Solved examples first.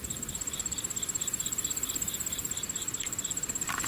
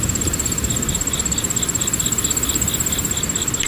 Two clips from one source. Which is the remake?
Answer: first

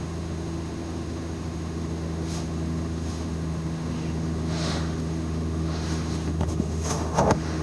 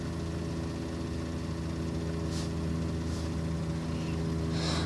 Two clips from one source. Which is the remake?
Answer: first